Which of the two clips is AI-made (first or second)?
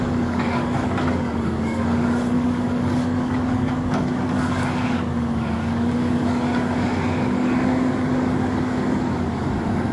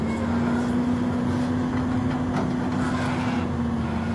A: first